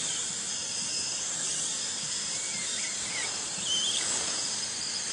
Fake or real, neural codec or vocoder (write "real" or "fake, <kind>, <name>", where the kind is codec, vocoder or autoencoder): fake, vocoder, BigVGAN v2